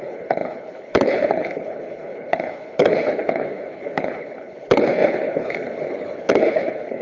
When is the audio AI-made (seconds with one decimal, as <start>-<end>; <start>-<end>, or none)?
0.0-7.0